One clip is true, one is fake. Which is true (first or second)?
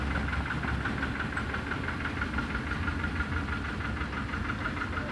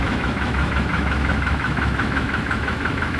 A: first